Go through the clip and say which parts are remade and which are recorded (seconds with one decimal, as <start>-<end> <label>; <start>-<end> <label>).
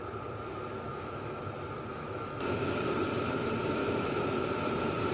0.0-0.9 recorded; 0.9-1.4 remade; 1.4-1.9 recorded; 1.9-2.7 remade; 2.7-3.8 recorded; 3.8-4.4 remade; 4.4-5.1 recorded